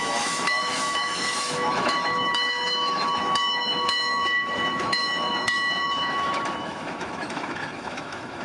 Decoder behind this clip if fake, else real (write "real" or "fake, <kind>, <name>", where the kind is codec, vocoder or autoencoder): fake, autoencoder, DAC-VAE